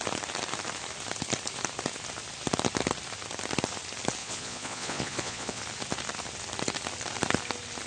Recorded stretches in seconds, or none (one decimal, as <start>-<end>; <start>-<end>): 0.0-4.2; 5.6-7.9